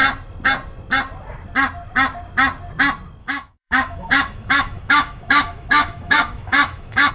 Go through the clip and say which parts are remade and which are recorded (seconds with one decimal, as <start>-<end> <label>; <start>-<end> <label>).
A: 0.0-3.2 recorded; 3.2-7.1 remade